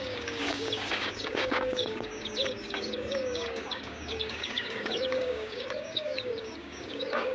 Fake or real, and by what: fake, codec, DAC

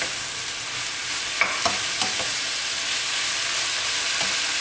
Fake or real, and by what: real